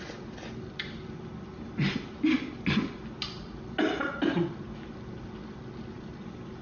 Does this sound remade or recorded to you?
recorded